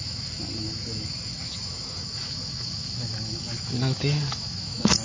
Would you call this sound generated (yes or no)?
yes